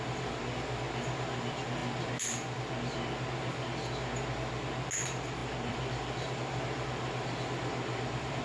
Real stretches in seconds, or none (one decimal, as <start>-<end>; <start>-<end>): 0.0-5.4